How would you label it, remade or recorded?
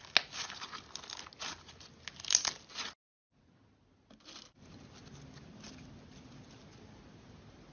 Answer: recorded